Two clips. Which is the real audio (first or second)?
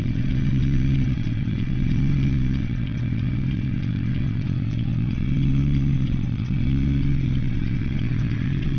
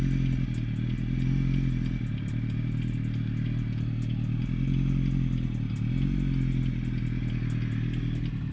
second